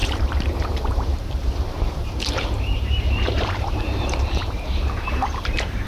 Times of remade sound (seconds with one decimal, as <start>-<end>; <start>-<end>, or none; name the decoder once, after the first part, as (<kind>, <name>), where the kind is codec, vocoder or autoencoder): 0.0-5.9 (vocoder, BigVGAN v2)